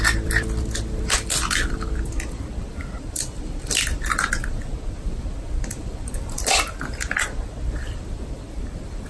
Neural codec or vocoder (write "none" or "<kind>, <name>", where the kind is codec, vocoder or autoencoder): vocoder, BigVGAN v2